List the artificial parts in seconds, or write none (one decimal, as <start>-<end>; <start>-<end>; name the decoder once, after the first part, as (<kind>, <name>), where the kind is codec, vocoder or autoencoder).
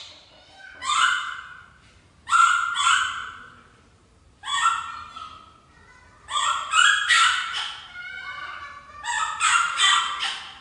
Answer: 0.0-4.6 (vocoder, BigVGAN v2); 6.2-9.9